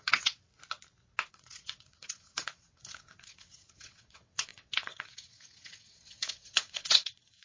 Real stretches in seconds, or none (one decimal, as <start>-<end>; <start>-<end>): 0.5-1.3